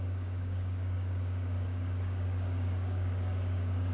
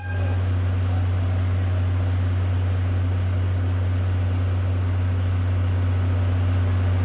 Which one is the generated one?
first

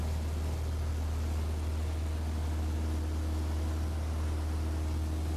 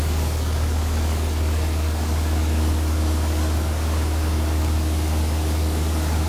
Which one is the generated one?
second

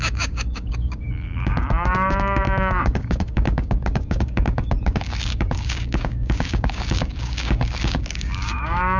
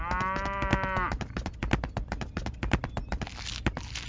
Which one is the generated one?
first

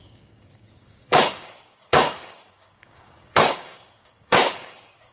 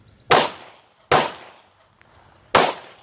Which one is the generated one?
first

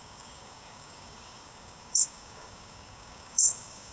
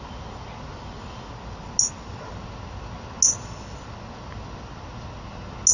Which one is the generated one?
first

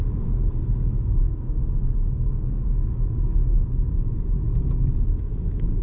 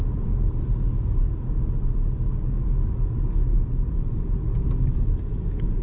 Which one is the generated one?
first